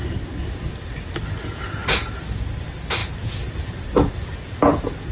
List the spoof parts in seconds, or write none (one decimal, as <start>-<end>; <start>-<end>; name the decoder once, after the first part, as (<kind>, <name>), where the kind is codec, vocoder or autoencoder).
none